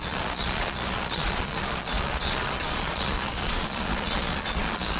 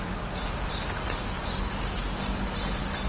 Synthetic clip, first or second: first